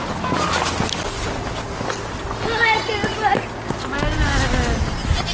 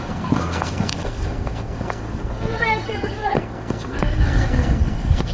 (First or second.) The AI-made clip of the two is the second